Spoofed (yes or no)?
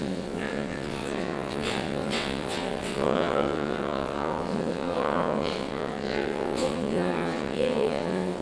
yes